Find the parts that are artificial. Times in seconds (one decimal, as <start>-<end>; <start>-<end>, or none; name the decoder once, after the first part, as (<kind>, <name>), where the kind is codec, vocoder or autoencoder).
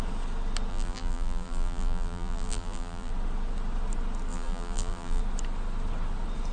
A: 0.7-3.1 (vocoder, BigVGAN v2); 4.3-5.2